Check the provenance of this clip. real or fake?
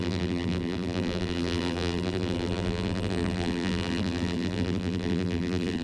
fake